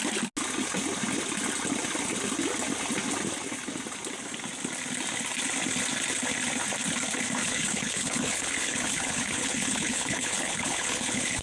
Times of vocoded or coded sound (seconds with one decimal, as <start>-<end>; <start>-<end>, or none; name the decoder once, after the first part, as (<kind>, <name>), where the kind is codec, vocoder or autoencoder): 7.4-11.4 (codec, HILCodec)